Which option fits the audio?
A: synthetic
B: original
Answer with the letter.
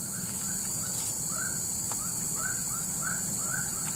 B